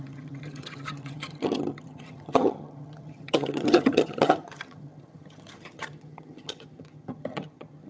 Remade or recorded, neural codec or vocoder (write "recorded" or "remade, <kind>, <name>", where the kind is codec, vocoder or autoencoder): remade, vocoder, HiFi-GAN